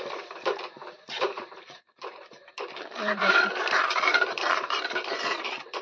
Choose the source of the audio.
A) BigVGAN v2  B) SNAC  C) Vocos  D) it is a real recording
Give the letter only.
A